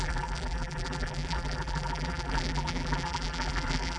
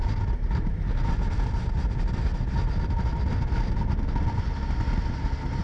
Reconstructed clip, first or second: first